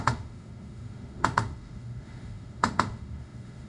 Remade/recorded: remade